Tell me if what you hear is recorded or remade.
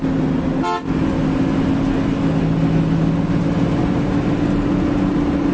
recorded